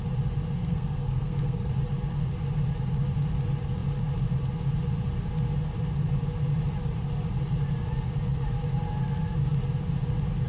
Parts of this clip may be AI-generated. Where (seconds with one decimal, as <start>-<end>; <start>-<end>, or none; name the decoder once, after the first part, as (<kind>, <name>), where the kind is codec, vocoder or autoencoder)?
0.6-1.7 (codec, SNAC)